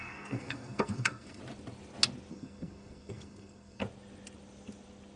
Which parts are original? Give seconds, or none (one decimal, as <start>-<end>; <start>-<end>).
1.4-2.3; 3.8-5.2